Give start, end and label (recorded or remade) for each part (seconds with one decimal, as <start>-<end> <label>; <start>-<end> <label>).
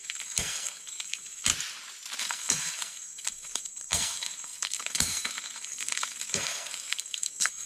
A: 0.0-1.5 remade; 1.5-2.2 recorded; 2.2-7.7 remade